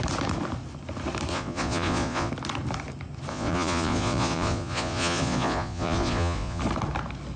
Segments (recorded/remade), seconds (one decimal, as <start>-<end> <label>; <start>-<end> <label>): 0.0-1.3 recorded; 1.3-2.3 remade; 2.3-3.3 recorded; 3.3-6.6 remade; 6.6-7.4 recorded